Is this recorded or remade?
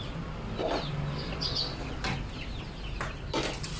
recorded